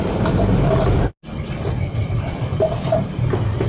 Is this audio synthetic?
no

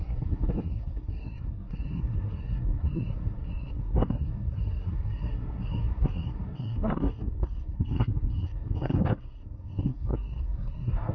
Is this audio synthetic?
yes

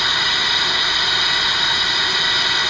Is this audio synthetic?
no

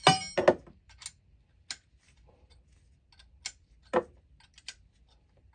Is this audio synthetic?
no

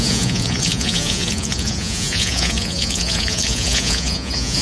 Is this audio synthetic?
yes